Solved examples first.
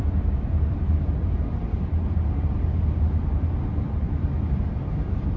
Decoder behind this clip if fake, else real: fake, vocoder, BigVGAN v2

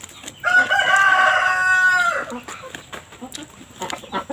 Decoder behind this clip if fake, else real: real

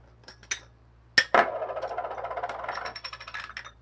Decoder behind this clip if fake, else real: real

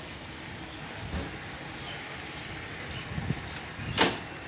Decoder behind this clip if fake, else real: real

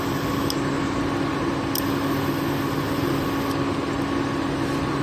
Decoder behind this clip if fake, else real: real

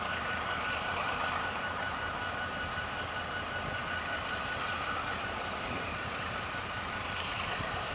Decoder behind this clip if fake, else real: fake, vocoder, BigVGAN v2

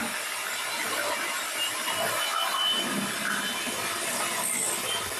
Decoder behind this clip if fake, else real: real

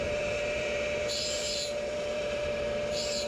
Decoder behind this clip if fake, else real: fake, vocoder, BigVGAN v2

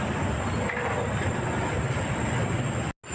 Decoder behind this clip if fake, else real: real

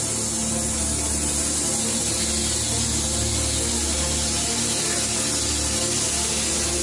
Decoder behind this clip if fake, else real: real